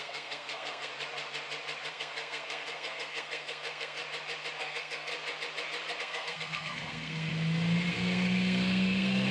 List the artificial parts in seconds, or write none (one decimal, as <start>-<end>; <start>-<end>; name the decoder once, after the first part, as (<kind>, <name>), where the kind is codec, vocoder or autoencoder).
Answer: 0.0-0.9 (codec, SNAC); 1.9-4.0; 4.6-5.1; 6.0-7.3; 7.9-9.3

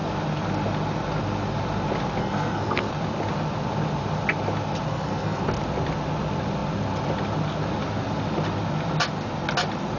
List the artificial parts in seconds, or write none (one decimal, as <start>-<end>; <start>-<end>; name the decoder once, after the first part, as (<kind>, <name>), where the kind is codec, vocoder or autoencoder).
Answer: 2.2-2.9 (codec, SNAC); 4.9-5.4

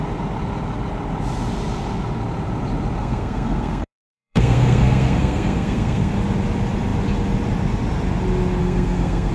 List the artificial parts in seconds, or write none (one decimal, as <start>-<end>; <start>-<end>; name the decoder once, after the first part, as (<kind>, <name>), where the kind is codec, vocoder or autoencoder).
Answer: 3.0-6.1 (codec, SNAC); 8.6-9.3

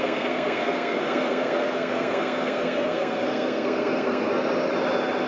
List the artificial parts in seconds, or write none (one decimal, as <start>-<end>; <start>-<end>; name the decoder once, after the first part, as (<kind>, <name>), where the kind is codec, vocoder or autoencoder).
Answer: 0.0-4.3 (codec, SNAC)

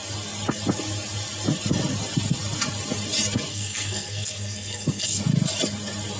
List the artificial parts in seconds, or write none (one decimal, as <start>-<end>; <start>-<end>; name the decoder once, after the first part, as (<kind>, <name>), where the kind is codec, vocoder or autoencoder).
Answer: 3.5-5.2 (codec, SNAC)

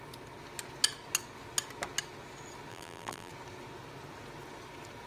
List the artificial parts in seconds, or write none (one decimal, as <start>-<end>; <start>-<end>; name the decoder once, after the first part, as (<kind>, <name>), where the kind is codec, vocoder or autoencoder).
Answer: 2.7-3.3 (vocoder, BigVGAN v2)

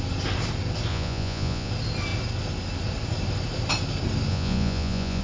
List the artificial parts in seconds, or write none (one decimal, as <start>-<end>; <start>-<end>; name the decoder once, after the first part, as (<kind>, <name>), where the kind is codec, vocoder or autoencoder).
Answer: 0.9-1.7 (vocoder, Vocos); 4.3-5.2

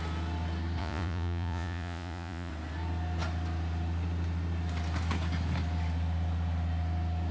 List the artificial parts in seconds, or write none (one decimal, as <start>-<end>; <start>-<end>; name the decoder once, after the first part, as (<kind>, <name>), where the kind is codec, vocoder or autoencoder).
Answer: 0.8-2.5 (vocoder, Vocos)